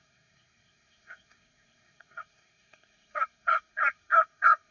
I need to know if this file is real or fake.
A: fake